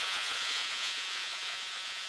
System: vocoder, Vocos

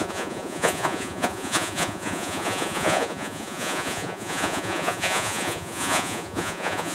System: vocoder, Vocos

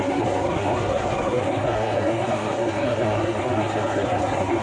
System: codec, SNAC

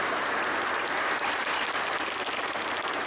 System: none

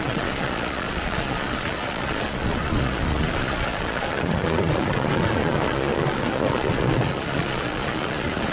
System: vocoder, Vocos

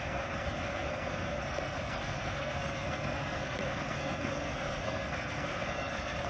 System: codec, SNAC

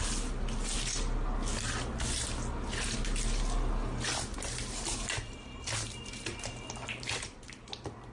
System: none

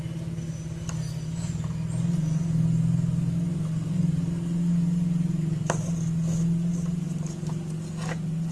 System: none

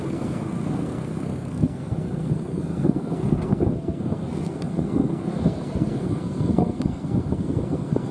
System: codec, SNAC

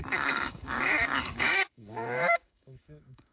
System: codec, DAC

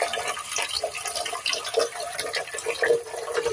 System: none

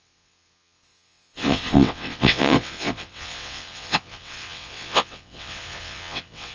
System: vocoder, WaveNeXt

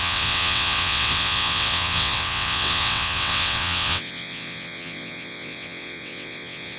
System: vocoder, WaveNeXt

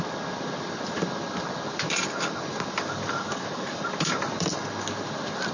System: none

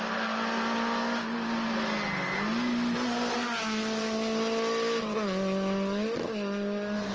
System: none